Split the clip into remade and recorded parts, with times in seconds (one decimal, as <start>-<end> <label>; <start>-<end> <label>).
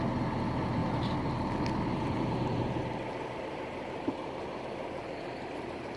0.0-6.0 recorded